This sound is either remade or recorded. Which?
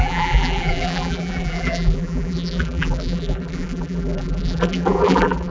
remade